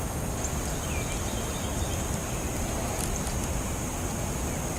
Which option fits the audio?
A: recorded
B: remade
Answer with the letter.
A